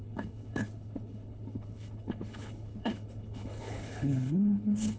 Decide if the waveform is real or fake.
fake